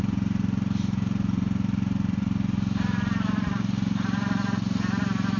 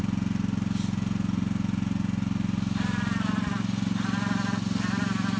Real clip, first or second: second